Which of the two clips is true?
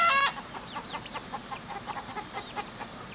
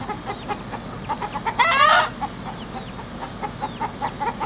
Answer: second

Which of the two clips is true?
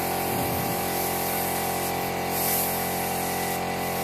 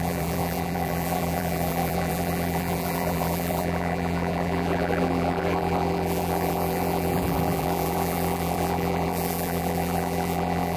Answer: first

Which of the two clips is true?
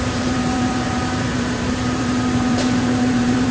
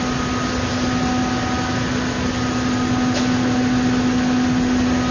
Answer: second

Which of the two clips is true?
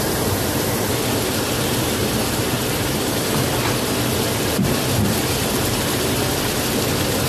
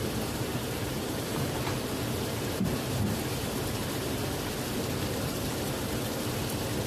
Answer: first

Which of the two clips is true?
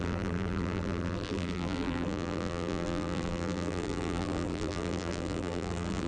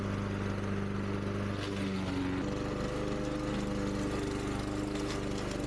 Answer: second